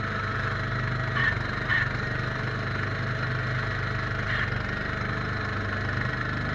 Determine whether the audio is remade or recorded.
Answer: recorded